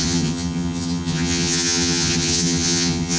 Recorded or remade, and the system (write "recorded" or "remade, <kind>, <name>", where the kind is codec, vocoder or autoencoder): remade, vocoder, HiFi-GAN